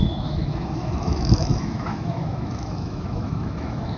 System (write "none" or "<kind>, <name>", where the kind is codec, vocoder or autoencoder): autoencoder, DAC-VAE